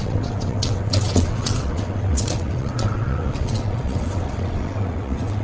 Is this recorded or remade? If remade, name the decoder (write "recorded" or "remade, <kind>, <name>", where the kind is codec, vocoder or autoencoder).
remade, vocoder, WaveNeXt